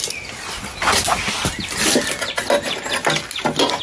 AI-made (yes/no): no